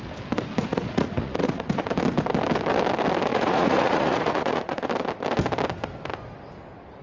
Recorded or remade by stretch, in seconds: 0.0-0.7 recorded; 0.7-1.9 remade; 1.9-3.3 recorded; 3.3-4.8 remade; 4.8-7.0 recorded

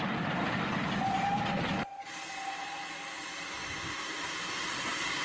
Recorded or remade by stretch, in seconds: 0.0-3.6 recorded; 3.6-5.2 remade

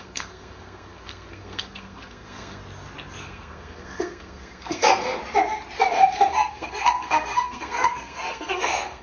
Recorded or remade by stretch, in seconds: 0.0-2.6 remade; 2.6-3.2 recorded; 3.2-5.2 remade; 5.2-5.8 recorded; 5.8-9.0 remade

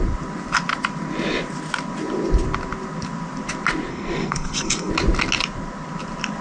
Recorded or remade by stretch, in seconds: 0.0-3.9 recorded; 3.9-4.9 remade; 4.9-6.4 recorded

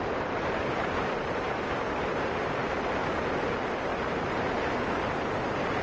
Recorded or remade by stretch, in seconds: 0.0-2.6 remade; 2.6-3.5 recorded; 3.5-3.9 remade; 3.9-4.6 recorded; 4.6-5.8 remade